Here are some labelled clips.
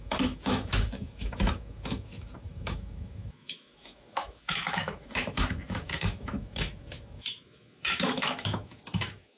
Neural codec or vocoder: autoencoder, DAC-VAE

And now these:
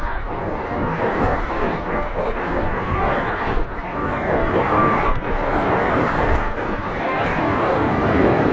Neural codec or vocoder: codec, DAC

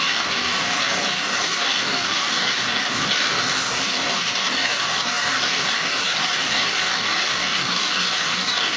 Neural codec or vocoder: codec, DAC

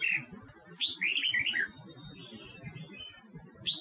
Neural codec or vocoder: none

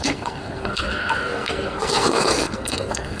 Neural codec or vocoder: codec, SNAC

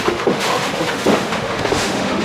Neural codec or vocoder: autoencoder, DAC-VAE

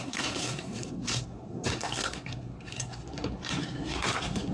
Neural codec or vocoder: codec, SNAC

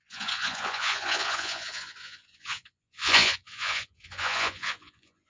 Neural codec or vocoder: vocoder, Vocos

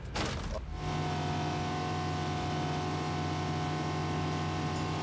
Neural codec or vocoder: none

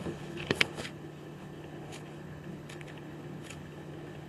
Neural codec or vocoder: codec, HILCodec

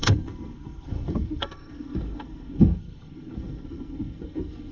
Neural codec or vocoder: codec, SNAC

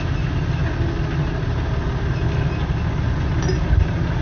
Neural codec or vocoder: none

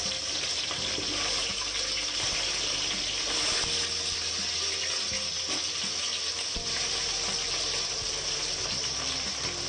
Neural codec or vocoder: none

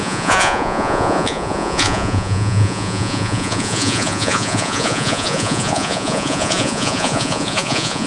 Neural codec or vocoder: vocoder, Vocos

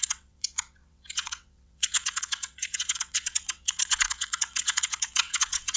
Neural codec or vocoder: vocoder, WaveNeXt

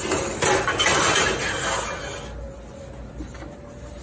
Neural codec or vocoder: none